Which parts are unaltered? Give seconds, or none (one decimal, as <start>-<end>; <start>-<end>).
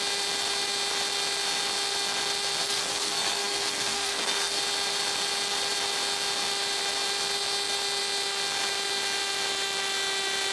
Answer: 0.0-2.6; 4.6-10.5